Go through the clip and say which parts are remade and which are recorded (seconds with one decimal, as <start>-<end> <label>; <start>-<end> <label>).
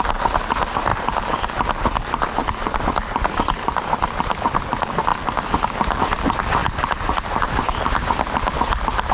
0.0-9.1 recorded